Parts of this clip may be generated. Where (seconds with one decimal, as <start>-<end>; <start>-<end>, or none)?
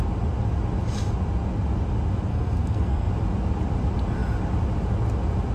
2.3-3.1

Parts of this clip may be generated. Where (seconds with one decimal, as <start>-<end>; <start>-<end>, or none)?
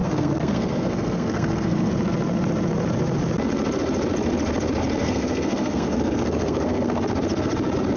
0.0-1.9; 5.0-7.0